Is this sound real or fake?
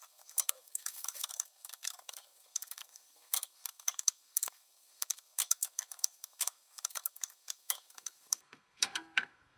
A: fake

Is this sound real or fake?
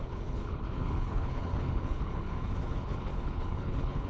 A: fake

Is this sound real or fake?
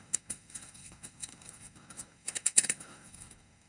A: fake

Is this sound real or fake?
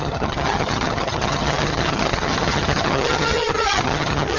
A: fake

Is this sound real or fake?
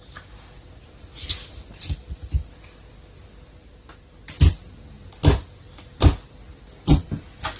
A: real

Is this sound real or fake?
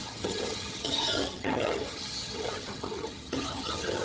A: fake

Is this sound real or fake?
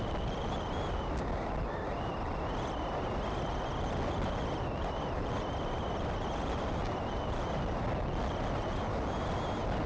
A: real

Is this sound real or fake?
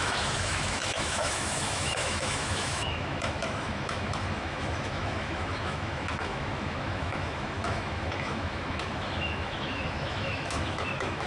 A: fake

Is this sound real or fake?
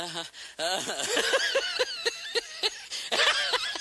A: real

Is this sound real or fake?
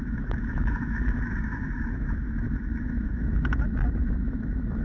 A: fake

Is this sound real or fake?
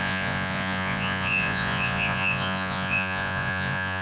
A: fake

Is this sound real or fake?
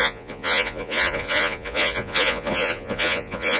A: fake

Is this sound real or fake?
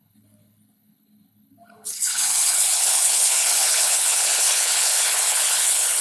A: fake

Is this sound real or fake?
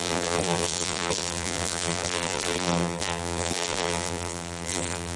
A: fake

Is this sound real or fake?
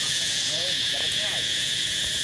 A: fake